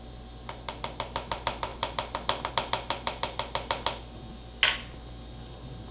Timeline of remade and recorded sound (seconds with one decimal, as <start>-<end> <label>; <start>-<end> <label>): 0.0-5.9 recorded